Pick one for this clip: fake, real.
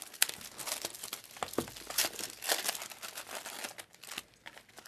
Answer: real